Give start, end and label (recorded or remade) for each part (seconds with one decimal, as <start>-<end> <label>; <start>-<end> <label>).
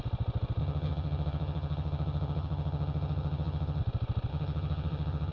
0.0-0.6 recorded; 0.6-3.8 remade; 3.8-4.3 recorded; 4.3-5.3 remade